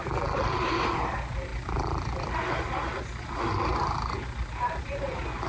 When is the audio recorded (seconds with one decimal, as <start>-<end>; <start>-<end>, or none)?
0.0-5.5